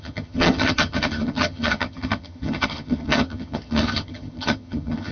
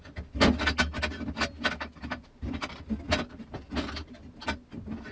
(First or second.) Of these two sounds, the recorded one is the second